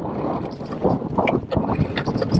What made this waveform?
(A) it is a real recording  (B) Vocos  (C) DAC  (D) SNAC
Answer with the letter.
A